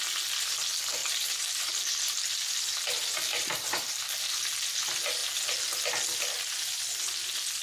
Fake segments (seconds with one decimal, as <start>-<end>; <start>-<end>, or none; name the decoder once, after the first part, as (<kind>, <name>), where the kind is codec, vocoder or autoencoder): 1.0-1.7 (vocoder, BigVGAN v2); 3.3-4.0